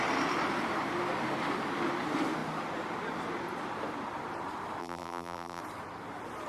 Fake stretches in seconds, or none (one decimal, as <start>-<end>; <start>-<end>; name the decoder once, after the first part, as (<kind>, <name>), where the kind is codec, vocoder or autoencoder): 4.8-5.6 (vocoder, BigVGAN v2)